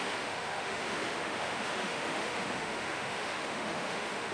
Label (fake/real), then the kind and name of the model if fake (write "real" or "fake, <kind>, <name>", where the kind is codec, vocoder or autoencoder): fake, autoencoder, DAC-VAE